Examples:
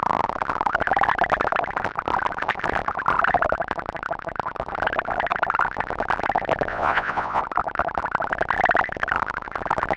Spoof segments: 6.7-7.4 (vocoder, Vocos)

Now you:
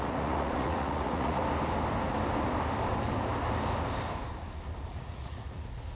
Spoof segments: 0.0-1.4 (vocoder, Vocos); 4.9-5.9

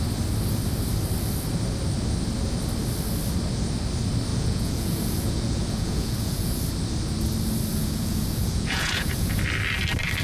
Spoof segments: 4.3-6.6 (vocoder, Vocos); 7.7-9.4

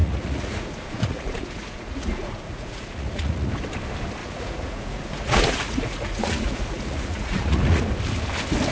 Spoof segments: 0.0-3.5 (vocoder, Vocos); 4.2-7.8

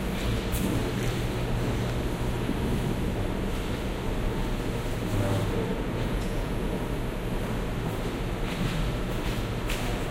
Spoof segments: 5.7-6.8 (vocoder, Vocos)

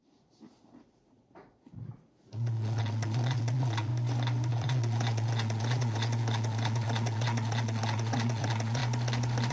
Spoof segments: 0.0-3.9 (vocoder, Vocos); 4.5-8.8

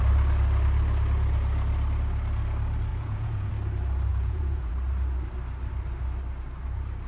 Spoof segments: 2.9-3.5 (vocoder, Vocos); 4.1-4.7

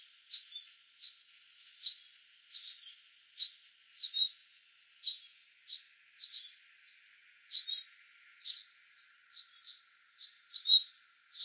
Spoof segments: 1.2-2.2 (vocoder, Vocos); 4.4-5.5